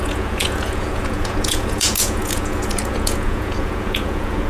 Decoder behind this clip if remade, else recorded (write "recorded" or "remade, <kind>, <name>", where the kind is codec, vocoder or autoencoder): remade, vocoder, Vocos